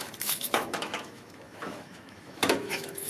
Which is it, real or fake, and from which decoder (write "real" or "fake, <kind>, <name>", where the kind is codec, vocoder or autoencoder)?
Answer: fake, autoencoder, DAC-VAE